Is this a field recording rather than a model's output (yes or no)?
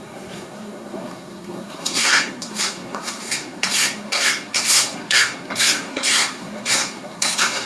no